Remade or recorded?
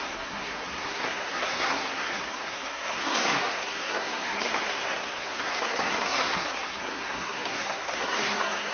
remade